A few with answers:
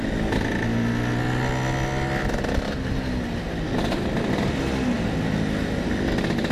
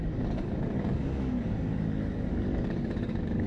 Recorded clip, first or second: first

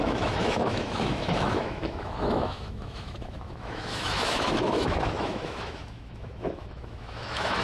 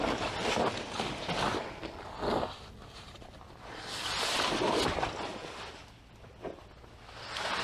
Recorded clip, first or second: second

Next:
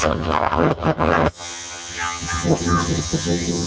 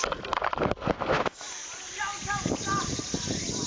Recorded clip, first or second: second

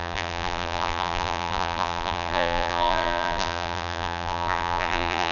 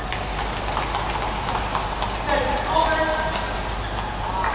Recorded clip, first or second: second